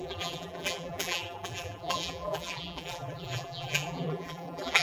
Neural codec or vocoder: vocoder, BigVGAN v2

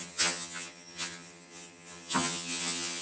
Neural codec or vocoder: vocoder, HiFi-GAN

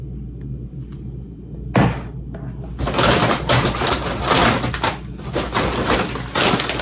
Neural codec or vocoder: none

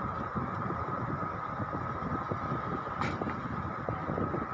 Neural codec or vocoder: none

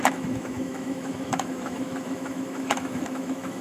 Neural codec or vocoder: autoencoder, DAC-VAE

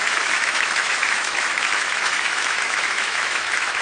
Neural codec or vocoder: autoencoder, DAC-VAE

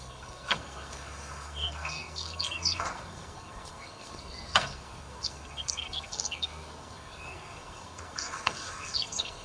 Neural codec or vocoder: codec, SNAC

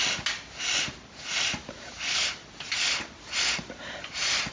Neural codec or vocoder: none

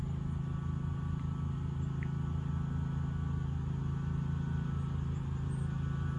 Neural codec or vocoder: none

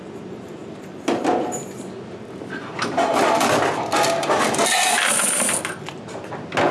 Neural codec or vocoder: none